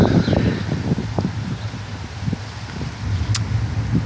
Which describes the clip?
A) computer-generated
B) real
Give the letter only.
B